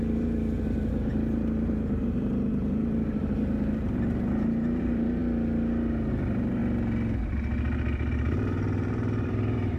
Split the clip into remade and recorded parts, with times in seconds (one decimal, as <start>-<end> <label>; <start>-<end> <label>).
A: 0.0-5.2 remade; 5.2-6.1 recorded; 6.1-6.6 remade; 6.6-8.1 recorded; 8.1-9.8 remade

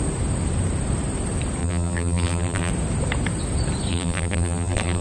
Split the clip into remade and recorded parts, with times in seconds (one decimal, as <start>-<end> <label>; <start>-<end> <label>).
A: 0.0-1.6 recorded; 1.6-2.7 remade; 2.7-3.9 recorded; 3.9-5.0 remade

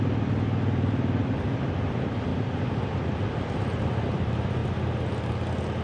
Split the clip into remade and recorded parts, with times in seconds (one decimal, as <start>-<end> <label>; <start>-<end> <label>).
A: 0.0-4.6 remade; 4.6-5.8 recorded

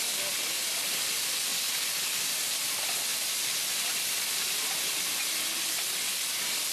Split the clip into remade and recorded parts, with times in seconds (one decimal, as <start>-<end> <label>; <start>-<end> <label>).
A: 0.0-1.5 recorded; 1.5-2.7 remade; 2.7-3.1 recorded; 3.1-4.8 remade; 4.8-6.7 recorded

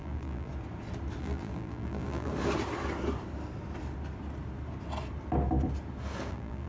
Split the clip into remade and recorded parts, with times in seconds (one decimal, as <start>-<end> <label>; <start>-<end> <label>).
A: 0.0-0.5 remade; 0.5-1.2 recorded; 1.2-2.3 remade; 2.3-6.3 recorded; 6.3-6.7 remade

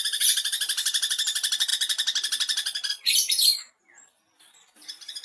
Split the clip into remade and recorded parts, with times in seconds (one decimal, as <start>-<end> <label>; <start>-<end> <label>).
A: 0.0-1.7 remade; 1.7-2.9 recorded; 2.9-5.2 remade

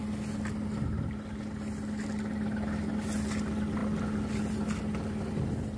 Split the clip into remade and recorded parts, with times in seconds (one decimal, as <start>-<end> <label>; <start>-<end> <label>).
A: 0.0-5.8 recorded

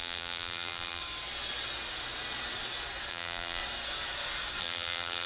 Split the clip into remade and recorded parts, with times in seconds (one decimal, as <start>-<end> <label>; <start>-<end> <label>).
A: 0.0-1.0 remade; 1.0-3.1 recorded; 3.1-3.6 remade; 3.6-4.6 recorded; 4.6-5.3 remade